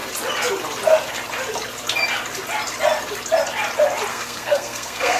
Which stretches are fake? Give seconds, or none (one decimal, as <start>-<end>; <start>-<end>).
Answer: 4.1-5.2